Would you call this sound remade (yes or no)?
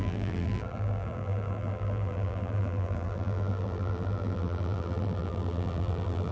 yes